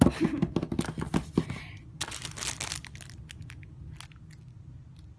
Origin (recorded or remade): recorded